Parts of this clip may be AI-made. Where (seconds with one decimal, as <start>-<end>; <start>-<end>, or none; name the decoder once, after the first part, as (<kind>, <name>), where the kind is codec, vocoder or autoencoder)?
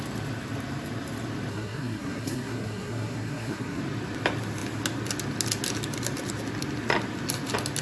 1.5-3.8 (codec, SNAC)